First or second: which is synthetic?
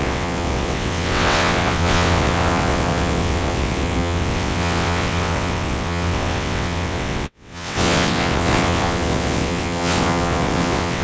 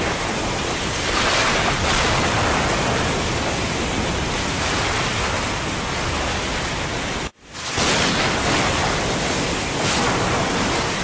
first